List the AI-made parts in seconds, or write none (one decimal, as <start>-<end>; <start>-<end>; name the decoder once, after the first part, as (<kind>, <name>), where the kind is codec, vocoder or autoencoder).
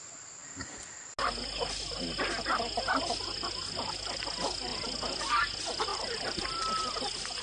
5.9-6.8 (vocoder, BigVGAN v2)